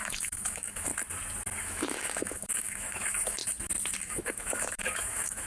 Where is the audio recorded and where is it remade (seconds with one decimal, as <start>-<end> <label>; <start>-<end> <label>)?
0.0-0.9 remade; 0.9-1.6 recorded; 1.6-3.4 remade; 3.4-4.0 recorded; 4.0-5.5 remade